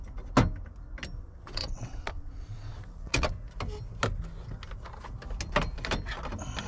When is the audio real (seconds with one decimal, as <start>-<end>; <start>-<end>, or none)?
0.0-1.2; 3.3-6.7